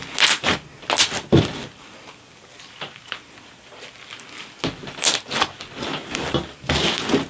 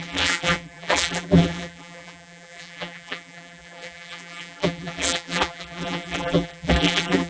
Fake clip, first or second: second